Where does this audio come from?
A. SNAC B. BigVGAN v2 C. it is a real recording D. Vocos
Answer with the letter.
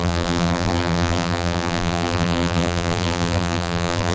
B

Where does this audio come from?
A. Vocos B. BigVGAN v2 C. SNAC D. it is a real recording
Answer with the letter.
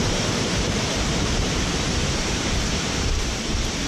B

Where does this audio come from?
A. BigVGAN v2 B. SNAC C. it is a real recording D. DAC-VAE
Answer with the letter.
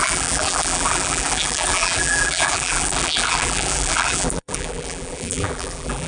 A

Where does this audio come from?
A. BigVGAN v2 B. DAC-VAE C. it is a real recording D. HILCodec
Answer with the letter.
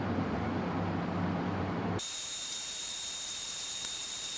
A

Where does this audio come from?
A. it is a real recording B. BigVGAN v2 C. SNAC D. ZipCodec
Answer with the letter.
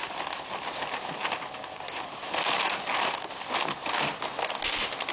A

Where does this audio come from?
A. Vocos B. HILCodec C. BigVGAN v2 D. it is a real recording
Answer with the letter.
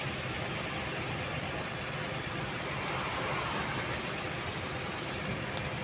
D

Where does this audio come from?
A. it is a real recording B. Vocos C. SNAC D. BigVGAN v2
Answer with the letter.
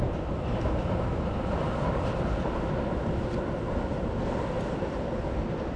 A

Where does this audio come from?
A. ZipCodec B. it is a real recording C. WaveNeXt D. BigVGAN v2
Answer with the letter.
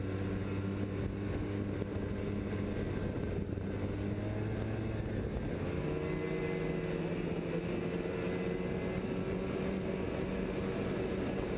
B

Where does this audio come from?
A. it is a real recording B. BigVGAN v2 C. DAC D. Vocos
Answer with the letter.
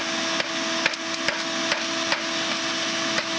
A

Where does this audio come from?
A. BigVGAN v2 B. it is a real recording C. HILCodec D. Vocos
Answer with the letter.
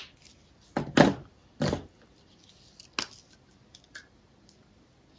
B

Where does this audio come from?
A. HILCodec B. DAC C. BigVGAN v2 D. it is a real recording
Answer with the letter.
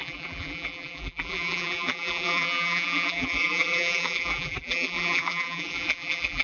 C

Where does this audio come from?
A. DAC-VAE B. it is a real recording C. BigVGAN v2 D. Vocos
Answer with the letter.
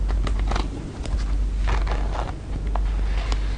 B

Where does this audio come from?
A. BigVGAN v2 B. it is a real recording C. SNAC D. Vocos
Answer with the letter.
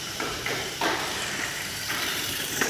A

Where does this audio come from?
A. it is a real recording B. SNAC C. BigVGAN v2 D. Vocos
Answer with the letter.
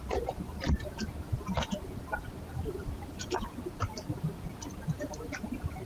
C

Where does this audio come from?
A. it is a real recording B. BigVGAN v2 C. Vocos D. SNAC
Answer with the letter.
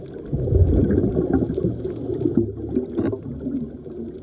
A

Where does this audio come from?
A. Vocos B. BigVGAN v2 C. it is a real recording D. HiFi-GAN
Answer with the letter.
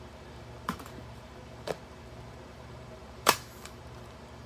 B